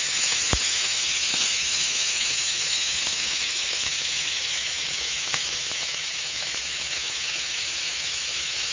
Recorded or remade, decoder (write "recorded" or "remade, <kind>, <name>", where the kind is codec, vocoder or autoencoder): remade, autoencoder, DAC-VAE